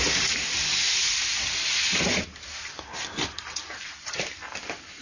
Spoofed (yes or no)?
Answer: no